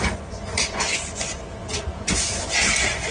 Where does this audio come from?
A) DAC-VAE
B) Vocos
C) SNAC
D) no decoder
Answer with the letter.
B